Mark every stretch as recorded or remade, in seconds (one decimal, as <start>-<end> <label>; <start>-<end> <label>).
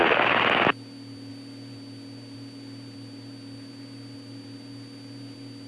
0.0-5.7 recorded